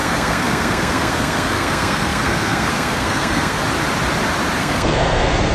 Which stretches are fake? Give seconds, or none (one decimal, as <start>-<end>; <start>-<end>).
0.0-3.6; 4.6-5.5